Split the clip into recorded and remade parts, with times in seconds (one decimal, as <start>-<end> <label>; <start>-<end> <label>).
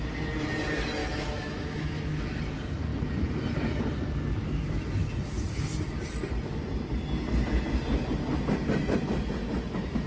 0.0-1.0 recorded; 1.0-2.2 remade; 2.2-10.1 recorded